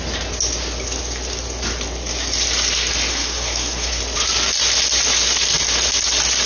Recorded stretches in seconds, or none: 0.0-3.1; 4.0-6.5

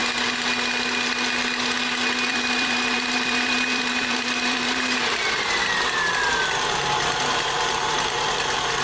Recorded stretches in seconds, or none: 0.0-2.3; 5.6-7.3

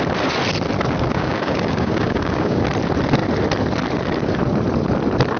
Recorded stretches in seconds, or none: 0.0-1.1; 2.7-5.4

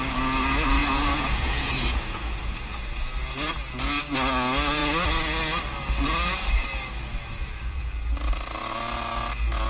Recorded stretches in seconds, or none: 0.0-0.8; 2.7-9.7

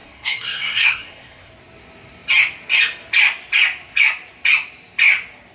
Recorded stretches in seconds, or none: 1.5-5.5

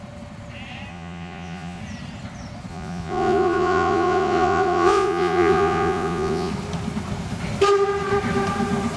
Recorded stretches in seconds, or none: 0.0-0.9; 1.8-2.7; 6.5-9.0

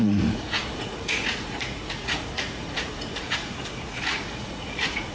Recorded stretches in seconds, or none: none